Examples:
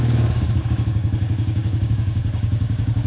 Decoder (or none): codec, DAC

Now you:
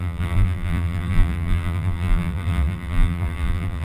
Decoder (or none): vocoder, BigVGAN v2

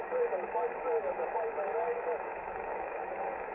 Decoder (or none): autoencoder, DAC-VAE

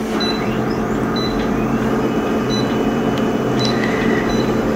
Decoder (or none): vocoder, BigVGAN v2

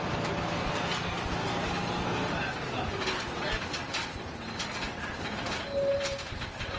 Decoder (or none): none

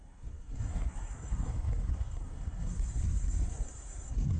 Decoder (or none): codec, SNAC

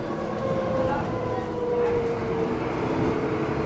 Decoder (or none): none